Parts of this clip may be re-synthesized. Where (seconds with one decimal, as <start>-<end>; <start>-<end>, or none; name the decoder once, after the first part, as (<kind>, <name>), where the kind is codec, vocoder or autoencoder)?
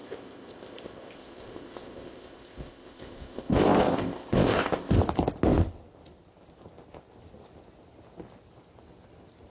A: 0.0-5.0 (codec, ZipCodec)